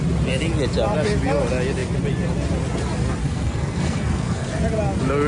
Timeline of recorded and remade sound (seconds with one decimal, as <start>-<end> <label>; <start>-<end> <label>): 0.0-3.2 recorded; 3.2-4.5 remade; 4.5-5.3 recorded